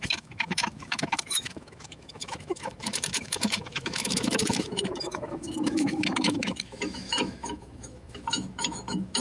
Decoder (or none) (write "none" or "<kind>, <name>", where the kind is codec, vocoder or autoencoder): autoencoder, DAC-VAE